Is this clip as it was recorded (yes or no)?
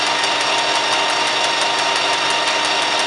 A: yes